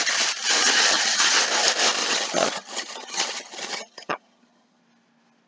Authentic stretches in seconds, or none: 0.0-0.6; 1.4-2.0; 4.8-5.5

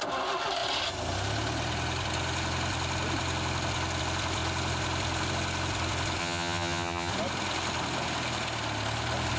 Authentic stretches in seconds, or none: 0.0-6.2; 7.1-9.4

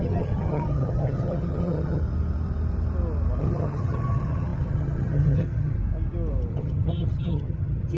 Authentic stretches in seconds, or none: 2.0-3.4; 5.8-6.5

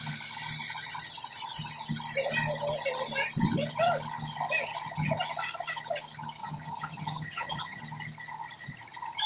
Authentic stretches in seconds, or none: 0.0-6.4; 7.8-9.3